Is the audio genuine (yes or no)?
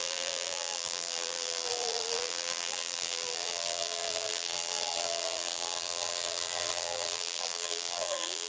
no